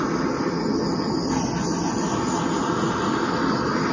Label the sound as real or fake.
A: real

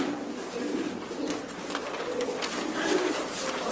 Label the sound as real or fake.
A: real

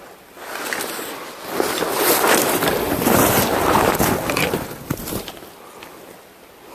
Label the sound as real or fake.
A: real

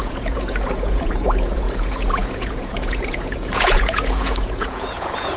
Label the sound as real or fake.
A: fake